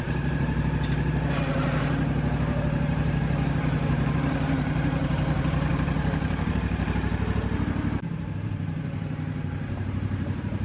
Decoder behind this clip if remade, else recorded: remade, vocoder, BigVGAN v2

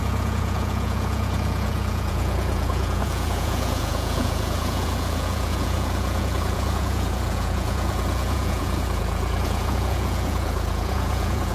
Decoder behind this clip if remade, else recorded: remade, vocoder, Vocos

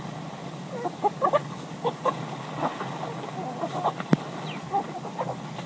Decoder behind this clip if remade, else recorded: recorded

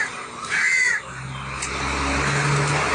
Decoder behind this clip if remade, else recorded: recorded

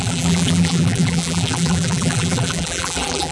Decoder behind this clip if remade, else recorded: remade, vocoder, BigVGAN v2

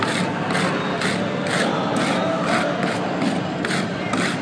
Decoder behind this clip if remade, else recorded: recorded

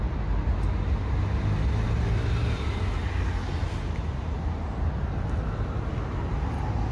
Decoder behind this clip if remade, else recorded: recorded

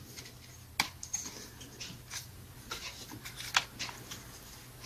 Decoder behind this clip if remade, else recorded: recorded